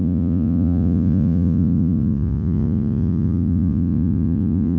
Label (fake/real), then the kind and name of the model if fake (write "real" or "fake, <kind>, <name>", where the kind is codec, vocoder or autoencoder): fake, vocoder, Vocos